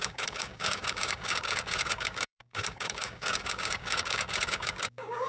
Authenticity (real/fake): fake